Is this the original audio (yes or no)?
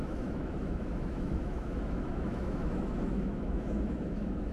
no